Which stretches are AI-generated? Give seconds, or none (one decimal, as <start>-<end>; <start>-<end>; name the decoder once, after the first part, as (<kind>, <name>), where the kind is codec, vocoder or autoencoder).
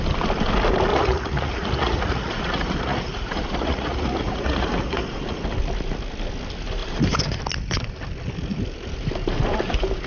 0.9-5.4 (vocoder, Vocos)